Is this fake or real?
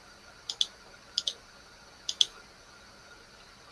real